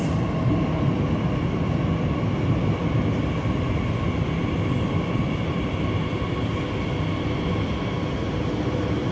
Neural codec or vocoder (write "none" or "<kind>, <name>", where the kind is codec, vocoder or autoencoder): none